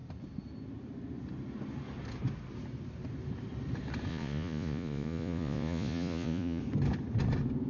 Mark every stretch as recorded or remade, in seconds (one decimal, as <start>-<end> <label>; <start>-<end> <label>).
0.0-4.1 recorded; 4.1-6.6 remade; 6.6-7.7 recorded